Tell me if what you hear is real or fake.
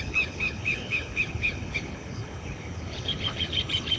fake